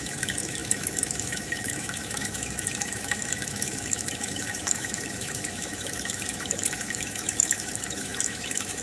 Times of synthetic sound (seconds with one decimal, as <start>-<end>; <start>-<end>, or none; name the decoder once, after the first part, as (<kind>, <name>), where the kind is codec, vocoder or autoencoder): 0.0-8.8 (autoencoder, DAC-VAE)